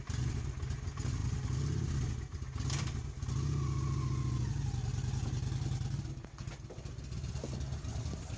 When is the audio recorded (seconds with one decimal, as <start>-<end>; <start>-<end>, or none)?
0.0-8.4